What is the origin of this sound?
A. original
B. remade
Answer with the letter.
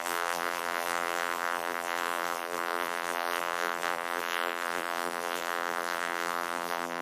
B